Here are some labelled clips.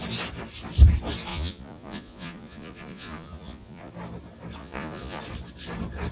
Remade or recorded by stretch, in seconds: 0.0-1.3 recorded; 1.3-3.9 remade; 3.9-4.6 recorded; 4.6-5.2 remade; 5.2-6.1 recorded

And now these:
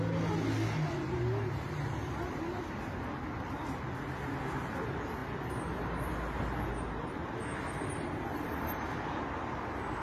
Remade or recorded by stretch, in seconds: 0.0-7.5 recorded; 7.5-8.9 remade; 8.9-10.0 recorded

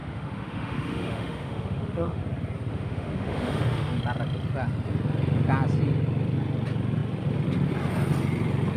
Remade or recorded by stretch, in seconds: 0.0-2.2 remade; 2.2-2.7 recorded; 2.7-4.0 remade; 4.0-8.8 recorded

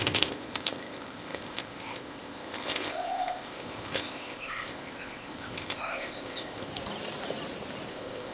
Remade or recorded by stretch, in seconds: 0.0-6.7 remade; 6.7-7.9 recorded; 7.9-8.3 remade

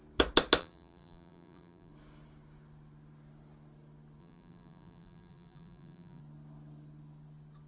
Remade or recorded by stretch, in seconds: 0.0-0.6 recorded; 0.6-1.9 remade; 1.9-4.2 recorded; 4.2-6.2 remade; 6.2-7.7 recorded

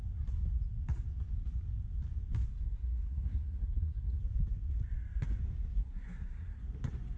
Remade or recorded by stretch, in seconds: 0.0-2.5 recorded; 2.5-4.2 remade; 4.2-5.8 recorded; 5.8-6.6 remade; 6.6-7.2 recorded

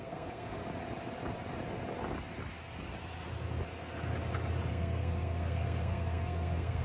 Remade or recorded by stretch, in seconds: 0.0-0.6 remade; 0.6-4.7 recorded; 4.7-6.8 remade

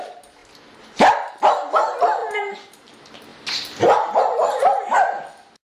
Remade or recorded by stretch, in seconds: 0.0-5.8 recorded